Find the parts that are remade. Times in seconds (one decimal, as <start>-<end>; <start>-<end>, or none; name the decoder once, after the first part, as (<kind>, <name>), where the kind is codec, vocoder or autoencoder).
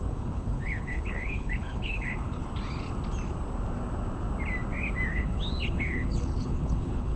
0.0-2.4 (codec, HILCodec); 5.1-7.2